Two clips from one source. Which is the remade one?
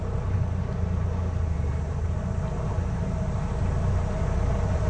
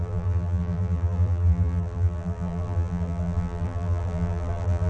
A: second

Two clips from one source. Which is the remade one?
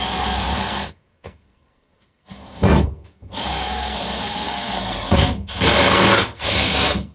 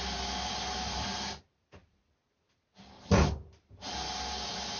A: first